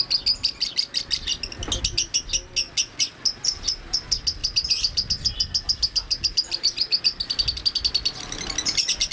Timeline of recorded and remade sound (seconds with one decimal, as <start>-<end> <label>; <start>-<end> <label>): 0.0-9.1 recorded